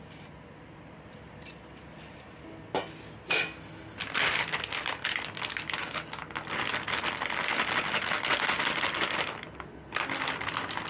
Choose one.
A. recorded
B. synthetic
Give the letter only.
A